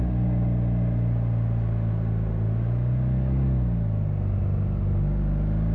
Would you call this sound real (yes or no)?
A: yes